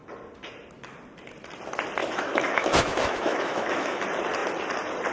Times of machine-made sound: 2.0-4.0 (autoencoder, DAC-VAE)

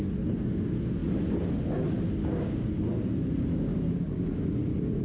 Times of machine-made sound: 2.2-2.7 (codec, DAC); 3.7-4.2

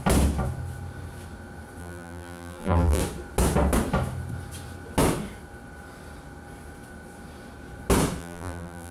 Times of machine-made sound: 1.8-3.0 (vocoder, BigVGAN v2); 8.2-8.9

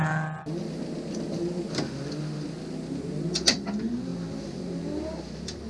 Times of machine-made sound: none

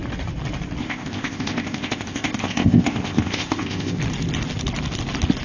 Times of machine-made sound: 0.8-4.0 (codec, ZipCodec)

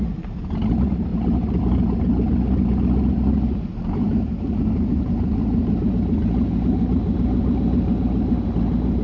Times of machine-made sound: 1.1-1.6 (vocoder, BigVGAN v2); 3.7-5.9

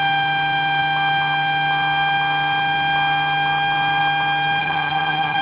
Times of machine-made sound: 4.6-5.4 (vocoder, HiFi-GAN)